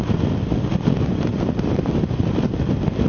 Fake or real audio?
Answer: real